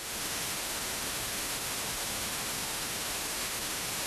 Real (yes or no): no